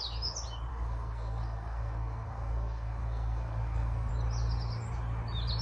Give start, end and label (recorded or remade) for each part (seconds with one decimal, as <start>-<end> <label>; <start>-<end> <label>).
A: 0.0-0.7 recorded; 0.7-4.1 remade; 4.1-5.6 recorded

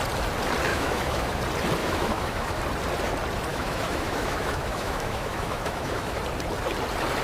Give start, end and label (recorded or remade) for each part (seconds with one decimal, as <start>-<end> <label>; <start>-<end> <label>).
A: 0.0-0.7 recorded; 0.7-1.4 remade; 1.4-1.8 recorded; 1.8-2.6 remade; 2.6-3.5 recorded; 3.5-6.2 remade; 6.2-7.2 recorded

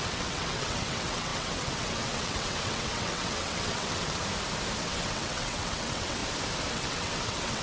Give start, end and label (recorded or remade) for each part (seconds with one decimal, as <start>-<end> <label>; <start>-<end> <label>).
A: 0.0-4.2 remade; 4.2-4.8 recorded; 4.8-6.2 remade; 6.2-6.7 recorded; 6.7-7.6 remade

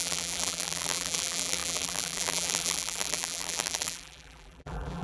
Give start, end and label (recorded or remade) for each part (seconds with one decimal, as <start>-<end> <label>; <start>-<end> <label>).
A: 0.0-5.0 remade

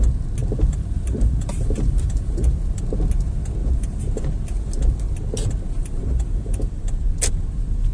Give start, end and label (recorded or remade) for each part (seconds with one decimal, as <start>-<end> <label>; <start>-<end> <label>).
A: 0.0-0.4 recorded; 0.4-2.8 remade; 2.8-3.6 recorded; 3.6-4.3 remade; 4.3-5.8 recorded; 5.8-7.1 remade; 7.1-7.9 recorded

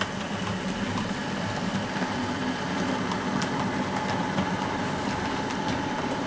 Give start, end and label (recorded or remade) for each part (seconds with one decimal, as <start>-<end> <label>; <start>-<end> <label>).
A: 0.0-6.3 recorded

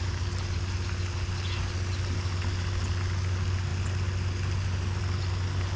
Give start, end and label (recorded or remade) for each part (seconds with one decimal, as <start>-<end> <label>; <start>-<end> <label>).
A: 0.0-5.8 recorded